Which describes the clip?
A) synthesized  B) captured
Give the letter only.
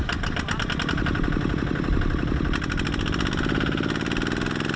B